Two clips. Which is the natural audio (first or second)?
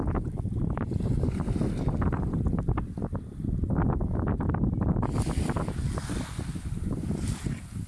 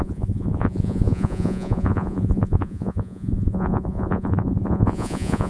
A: first